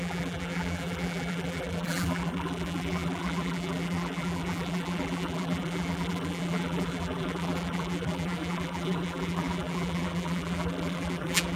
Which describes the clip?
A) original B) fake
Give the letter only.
B